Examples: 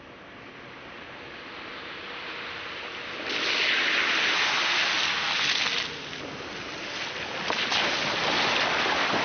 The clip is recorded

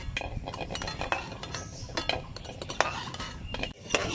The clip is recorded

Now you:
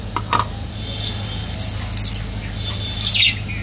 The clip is recorded